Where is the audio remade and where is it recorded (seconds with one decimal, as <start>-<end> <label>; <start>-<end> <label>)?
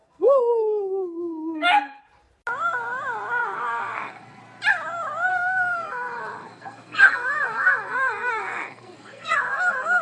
0.0-2.0 remade; 2.0-3.4 recorded; 3.4-4.4 remade; 4.4-5.3 recorded; 5.3-10.0 remade